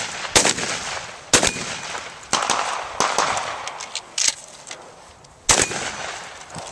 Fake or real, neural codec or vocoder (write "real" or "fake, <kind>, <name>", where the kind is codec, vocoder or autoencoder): real